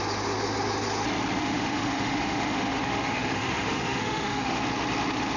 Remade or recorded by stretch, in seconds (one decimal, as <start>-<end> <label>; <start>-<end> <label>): 0.0-1.4 recorded; 1.4-4.6 remade; 4.6-5.4 recorded